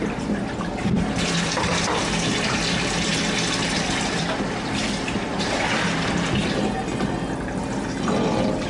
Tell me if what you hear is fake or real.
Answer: fake